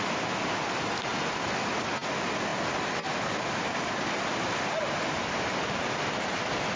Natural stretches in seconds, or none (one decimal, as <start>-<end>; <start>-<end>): 0.0-6.8